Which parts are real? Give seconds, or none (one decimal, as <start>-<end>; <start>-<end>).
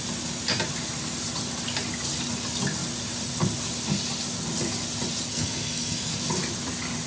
0.0-5.3; 6.1-7.1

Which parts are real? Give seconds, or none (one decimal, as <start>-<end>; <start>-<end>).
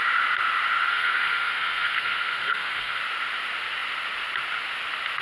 0.0-0.9; 3.0-5.2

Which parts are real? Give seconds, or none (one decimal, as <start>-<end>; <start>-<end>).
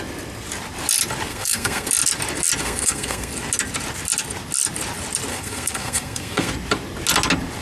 0.0-1.3; 1.9-2.6; 3.3-5.3; 6.5-7.6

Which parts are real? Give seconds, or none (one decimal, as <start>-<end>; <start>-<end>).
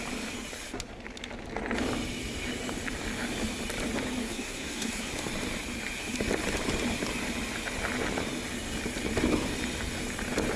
0.0-4.2; 5.1-10.6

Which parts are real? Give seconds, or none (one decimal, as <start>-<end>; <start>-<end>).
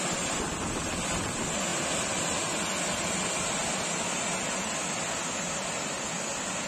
0.0-6.7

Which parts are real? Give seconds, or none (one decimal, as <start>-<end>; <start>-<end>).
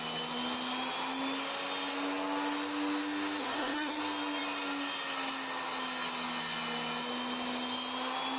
0.0-3.4; 4.0-8.4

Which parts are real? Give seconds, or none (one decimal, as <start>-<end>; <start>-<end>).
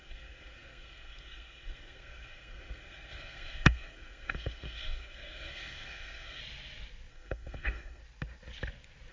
6.4-7.1; 8.0-9.1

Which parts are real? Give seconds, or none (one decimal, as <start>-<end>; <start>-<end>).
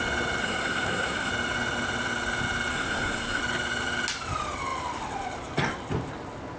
0.0-0.4; 1.3-2.7; 3.4-6.6